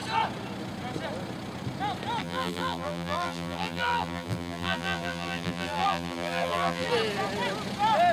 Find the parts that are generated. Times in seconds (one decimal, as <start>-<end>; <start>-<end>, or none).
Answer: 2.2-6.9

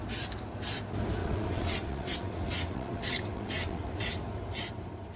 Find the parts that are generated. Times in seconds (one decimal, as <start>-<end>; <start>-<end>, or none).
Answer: 1.2-4.2

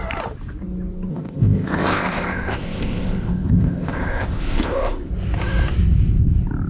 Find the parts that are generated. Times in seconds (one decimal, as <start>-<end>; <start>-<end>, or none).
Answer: 1.1-5.1